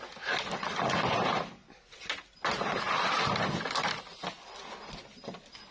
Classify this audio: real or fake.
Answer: real